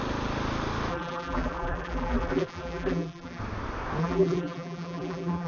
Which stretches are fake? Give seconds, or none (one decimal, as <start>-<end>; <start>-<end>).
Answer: 0.9-3.4; 4.0-5.5